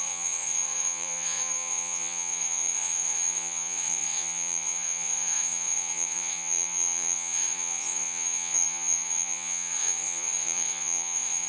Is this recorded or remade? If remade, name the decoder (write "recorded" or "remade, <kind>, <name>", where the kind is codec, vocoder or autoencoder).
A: remade, vocoder, Vocos